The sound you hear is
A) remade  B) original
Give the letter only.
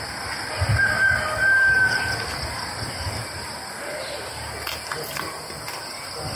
B